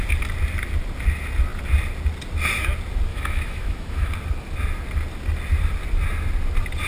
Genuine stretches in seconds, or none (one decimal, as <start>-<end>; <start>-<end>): 0.0-3.1; 4.1-6.9